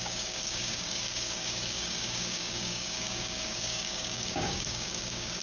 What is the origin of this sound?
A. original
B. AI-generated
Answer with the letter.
B